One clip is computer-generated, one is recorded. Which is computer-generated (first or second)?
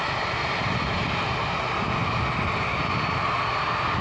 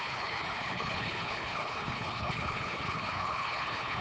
second